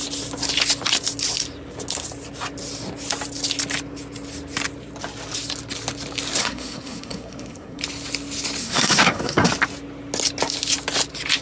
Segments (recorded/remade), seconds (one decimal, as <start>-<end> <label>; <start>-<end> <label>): 0.0-6.4 recorded; 6.4-7.8 remade; 7.8-8.6 recorded; 8.6-9.5 remade; 9.5-11.4 recorded